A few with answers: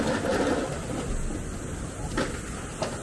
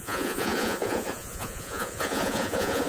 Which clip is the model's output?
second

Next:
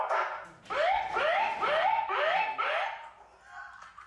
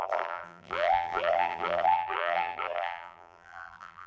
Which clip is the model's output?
second